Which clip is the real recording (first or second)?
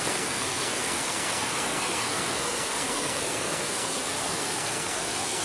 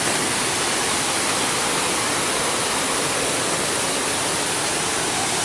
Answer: second